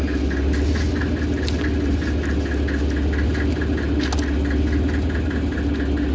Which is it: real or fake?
real